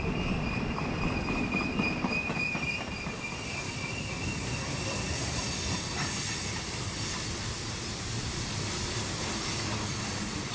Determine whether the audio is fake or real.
fake